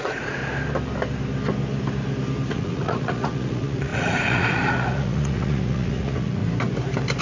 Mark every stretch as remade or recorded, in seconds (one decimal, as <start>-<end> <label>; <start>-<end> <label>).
0.0-0.4 remade; 0.4-2.5 recorded; 2.5-6.4 remade; 6.4-7.2 recorded